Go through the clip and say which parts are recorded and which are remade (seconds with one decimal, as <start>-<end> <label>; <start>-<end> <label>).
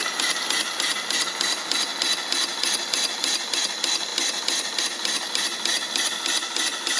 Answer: 0.0-0.6 remade; 0.6-2.5 recorded; 2.5-3.4 remade; 3.4-4.1 recorded; 4.1-4.8 remade; 4.8-7.0 recorded